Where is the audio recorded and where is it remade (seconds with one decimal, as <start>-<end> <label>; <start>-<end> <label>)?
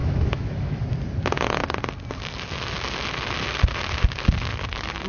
0.0-0.8 remade; 0.8-5.1 recorded